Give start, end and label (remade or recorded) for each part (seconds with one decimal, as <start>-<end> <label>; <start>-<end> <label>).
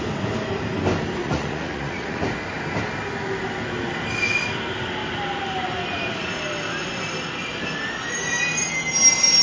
0.0-1.2 recorded; 1.2-2.2 remade; 2.2-9.4 recorded